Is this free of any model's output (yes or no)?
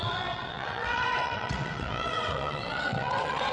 no